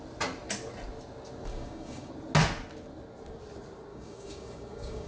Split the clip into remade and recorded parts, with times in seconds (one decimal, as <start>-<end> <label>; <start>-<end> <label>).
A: 0.0-1.5 recorded; 1.5-2.1 remade; 2.1-3.9 recorded; 3.9-5.1 remade